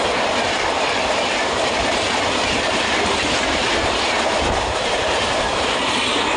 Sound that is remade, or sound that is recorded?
recorded